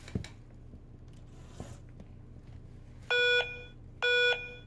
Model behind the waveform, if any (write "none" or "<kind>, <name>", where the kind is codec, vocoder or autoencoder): none